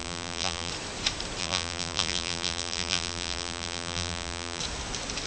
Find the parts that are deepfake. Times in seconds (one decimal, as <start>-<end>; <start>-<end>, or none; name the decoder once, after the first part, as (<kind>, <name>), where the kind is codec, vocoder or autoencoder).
0.0-0.7 (vocoder, BigVGAN v2); 1.4-4.6